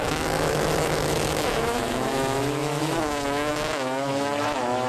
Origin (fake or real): fake